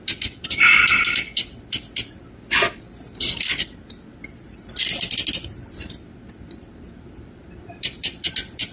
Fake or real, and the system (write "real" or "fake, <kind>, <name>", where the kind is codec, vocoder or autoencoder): fake, vocoder, BigVGAN v2